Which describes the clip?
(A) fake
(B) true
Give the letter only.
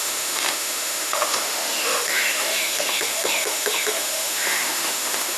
A